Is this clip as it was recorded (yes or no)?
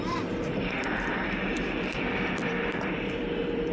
no